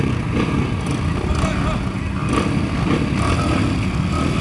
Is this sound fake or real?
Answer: real